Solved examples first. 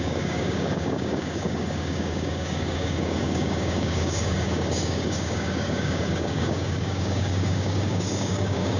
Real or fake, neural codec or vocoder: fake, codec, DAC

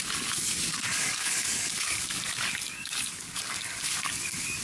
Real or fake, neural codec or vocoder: fake, codec, DAC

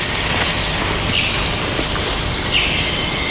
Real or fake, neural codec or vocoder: real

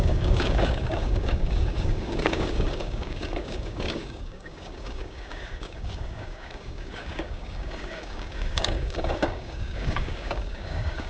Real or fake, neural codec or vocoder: fake, codec, DAC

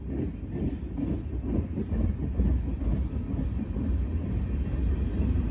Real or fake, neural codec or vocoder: real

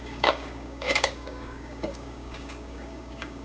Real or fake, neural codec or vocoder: fake, codec, DAC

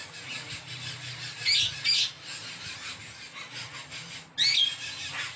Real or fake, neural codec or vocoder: real